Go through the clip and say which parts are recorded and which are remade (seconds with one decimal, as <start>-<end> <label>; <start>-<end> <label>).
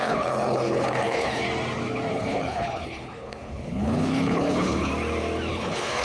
0.0-1.4 remade; 1.4-2.1 recorded; 2.1-4.9 remade; 4.9-5.5 recorded; 5.5-6.0 remade